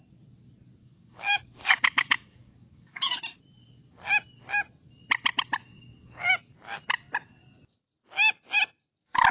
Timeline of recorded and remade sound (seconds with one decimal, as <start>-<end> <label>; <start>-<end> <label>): 0.0-0.8 recorded; 0.8-3.2 remade; 3.2-5.7 recorded; 5.7-6.3 remade; 6.3-9.3 recorded